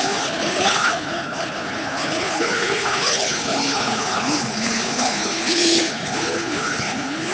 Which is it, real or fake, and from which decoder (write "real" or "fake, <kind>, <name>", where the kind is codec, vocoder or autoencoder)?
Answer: fake, codec, HILCodec